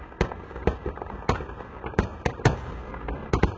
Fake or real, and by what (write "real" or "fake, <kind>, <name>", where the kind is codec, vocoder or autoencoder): real